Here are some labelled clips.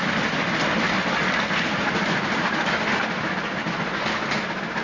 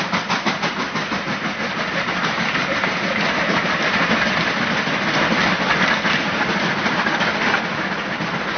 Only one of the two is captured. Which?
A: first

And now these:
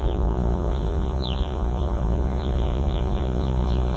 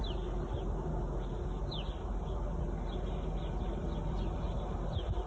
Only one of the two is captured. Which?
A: second